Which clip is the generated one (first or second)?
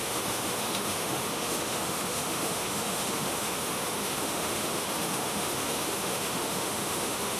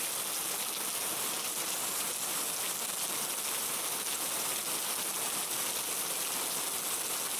first